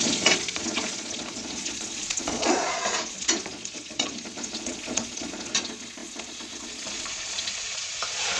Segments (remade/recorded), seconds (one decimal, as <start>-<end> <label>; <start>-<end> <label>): 0.0-8.4 remade